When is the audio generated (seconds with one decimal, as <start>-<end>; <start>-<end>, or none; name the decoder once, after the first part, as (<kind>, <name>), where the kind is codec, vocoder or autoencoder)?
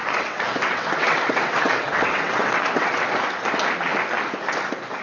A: 0.0-3.0 (vocoder, WaveNeXt)